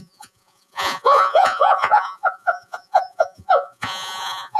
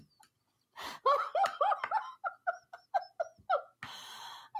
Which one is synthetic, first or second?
first